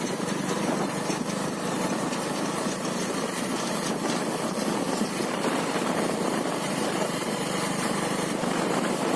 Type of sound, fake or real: fake